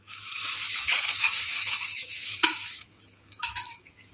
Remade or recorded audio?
remade